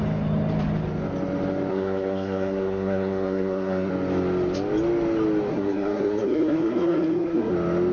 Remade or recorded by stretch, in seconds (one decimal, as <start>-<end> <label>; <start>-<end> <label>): 0.0-1.7 recorded; 1.7-3.9 remade; 3.9-5.5 recorded; 5.5-7.5 remade; 7.5-7.9 recorded